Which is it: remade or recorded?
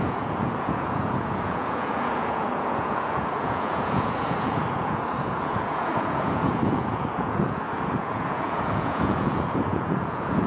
remade